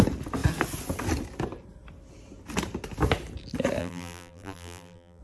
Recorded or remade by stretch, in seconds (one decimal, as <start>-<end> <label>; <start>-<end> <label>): 0.0-3.8 recorded; 3.8-5.2 remade